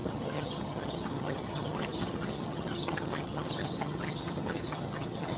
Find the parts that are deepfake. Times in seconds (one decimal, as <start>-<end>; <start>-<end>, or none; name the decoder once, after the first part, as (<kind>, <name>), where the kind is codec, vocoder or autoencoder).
0.0-5.4 (vocoder, HiFi-GAN)